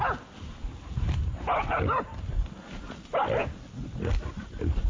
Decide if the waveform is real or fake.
real